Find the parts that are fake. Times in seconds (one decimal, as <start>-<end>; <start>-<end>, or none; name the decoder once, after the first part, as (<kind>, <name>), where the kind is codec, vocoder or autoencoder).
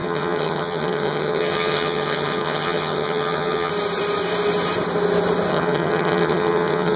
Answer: 0.0-3.7 (vocoder, HiFi-GAN); 5.5-7.0